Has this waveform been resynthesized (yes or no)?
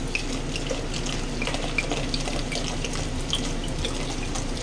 no